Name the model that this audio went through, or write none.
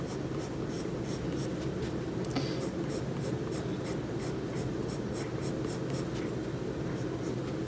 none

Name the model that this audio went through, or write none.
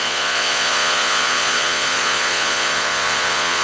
vocoder, Vocos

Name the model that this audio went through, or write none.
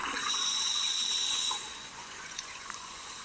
vocoder, Vocos